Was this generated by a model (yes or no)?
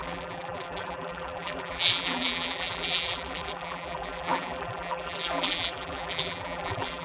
yes